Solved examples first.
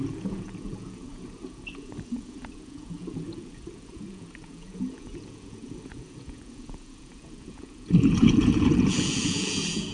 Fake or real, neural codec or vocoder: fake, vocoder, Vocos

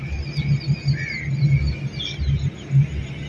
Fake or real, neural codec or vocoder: real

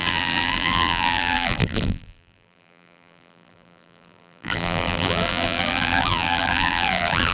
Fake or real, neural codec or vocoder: fake, vocoder, BigVGAN v2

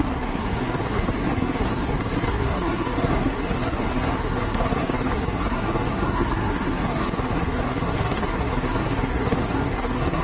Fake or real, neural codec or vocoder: fake, codec, SNAC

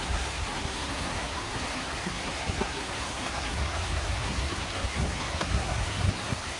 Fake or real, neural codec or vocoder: fake, codec, SNAC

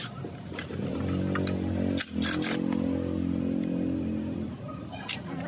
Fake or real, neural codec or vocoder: real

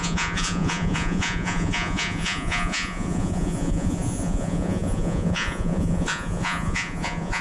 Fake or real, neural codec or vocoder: fake, vocoder, Vocos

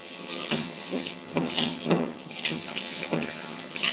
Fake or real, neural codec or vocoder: fake, vocoder, HiFi-GAN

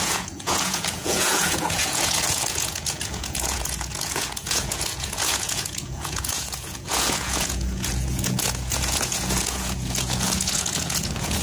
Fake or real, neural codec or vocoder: fake, vocoder, Vocos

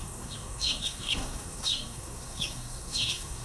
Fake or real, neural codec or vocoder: fake, codec, SNAC